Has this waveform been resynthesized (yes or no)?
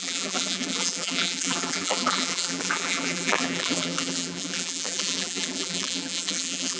yes